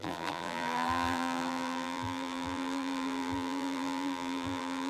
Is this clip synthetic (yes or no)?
yes